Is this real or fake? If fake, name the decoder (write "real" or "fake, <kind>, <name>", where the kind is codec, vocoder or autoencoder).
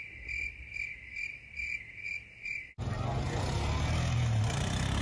real